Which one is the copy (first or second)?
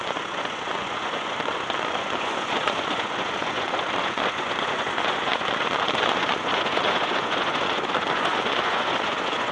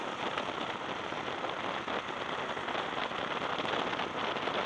first